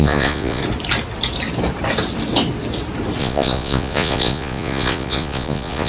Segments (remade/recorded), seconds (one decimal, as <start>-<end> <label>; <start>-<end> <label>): 0.0-0.6 remade; 0.6-3.2 recorded; 3.2-5.9 remade